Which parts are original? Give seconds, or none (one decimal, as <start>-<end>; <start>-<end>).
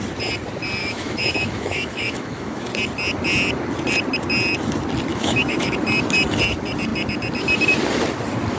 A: 0.0-0.8; 2.7-5.1; 5.8-8.6